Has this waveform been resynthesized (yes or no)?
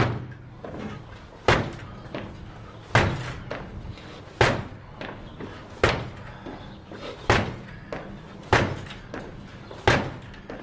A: no